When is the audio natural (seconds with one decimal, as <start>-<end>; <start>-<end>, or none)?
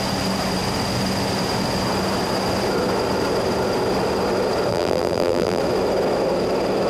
0.0-4.7; 5.6-6.9